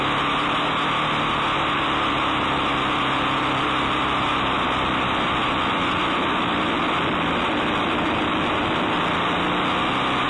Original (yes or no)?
yes